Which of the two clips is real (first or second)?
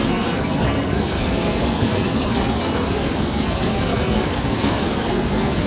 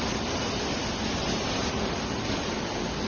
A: second